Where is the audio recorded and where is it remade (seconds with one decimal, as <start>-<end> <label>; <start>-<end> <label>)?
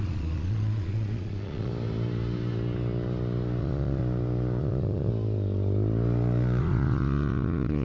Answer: 0.0-1.7 remade; 1.7-3.6 recorded; 3.6-4.0 remade; 4.0-4.6 recorded; 4.6-5.1 remade; 5.1-6.6 recorded; 6.6-7.8 remade